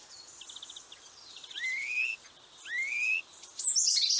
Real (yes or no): yes